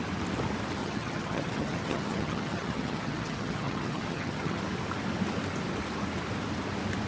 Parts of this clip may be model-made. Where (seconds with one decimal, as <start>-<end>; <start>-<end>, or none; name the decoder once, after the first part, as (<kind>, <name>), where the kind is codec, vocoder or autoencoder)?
0.8-4.6 (vocoder, HiFi-GAN)

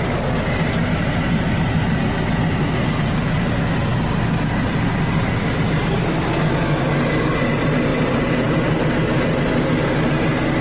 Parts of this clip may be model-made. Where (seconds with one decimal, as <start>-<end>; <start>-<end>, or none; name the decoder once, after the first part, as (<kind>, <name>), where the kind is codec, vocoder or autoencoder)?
none